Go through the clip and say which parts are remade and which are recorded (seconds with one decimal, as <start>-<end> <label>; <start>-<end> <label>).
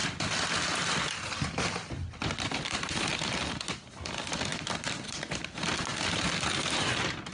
0.0-7.3 recorded